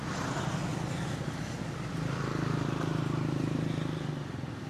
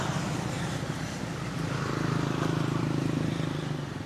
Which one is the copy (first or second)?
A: second